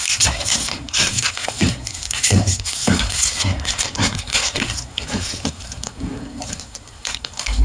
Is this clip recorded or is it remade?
remade